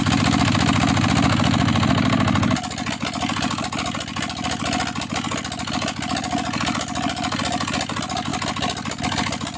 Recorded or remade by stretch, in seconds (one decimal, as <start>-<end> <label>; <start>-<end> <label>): 0.0-9.6 recorded

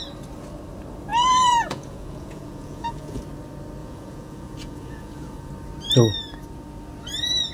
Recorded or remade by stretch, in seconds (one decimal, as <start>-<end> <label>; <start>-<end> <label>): 0.0-1.1 recorded; 1.1-3.2 remade; 3.2-3.8 recorded; 3.8-5.5 remade; 5.5-7.5 recorded